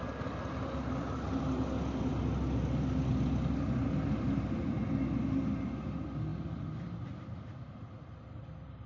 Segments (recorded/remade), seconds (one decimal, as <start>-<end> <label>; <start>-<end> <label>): 0.0-8.9 recorded